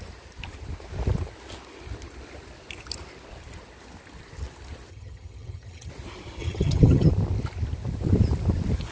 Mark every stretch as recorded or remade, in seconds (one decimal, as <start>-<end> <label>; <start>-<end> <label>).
0.0-4.9 recorded; 4.9-5.9 remade; 5.9-6.4 recorded; 6.4-7.1 remade; 7.1-8.9 recorded